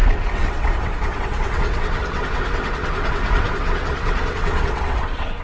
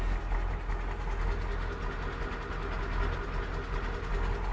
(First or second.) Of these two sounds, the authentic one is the second